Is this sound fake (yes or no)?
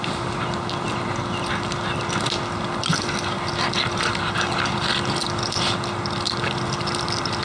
no